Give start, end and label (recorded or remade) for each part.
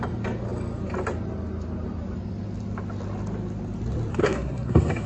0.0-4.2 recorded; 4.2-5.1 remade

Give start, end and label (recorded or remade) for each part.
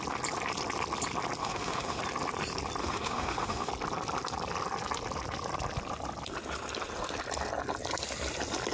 0.0-1.4 recorded; 1.4-2.0 remade; 2.0-2.8 recorded; 2.8-3.7 remade; 3.7-8.7 recorded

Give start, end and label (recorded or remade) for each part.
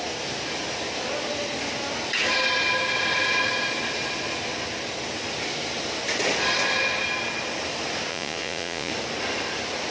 0.0-8.1 recorded; 8.1-8.9 remade; 8.9-9.9 recorded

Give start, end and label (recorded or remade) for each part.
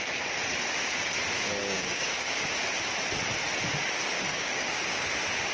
0.0-1.6 recorded; 1.6-2.4 remade; 2.4-4.3 recorded; 4.3-5.1 remade; 5.1-5.5 recorded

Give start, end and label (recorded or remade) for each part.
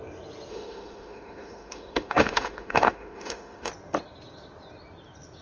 0.0-0.5 recorded; 0.5-3.7 remade; 3.7-5.4 recorded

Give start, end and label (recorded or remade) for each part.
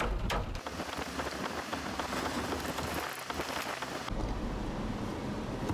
0.0-1.7 recorded; 1.7-3.0 remade; 3.0-5.7 recorded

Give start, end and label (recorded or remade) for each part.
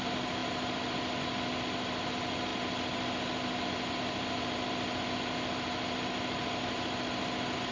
0.0-7.7 recorded